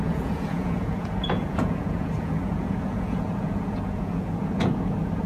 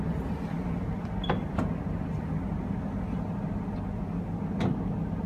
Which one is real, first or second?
second